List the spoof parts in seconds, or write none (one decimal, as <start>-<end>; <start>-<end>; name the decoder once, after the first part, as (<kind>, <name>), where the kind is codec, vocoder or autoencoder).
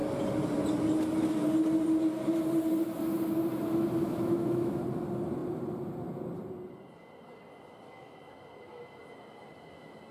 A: 4.0-4.8 (autoencoder, DAC-VAE)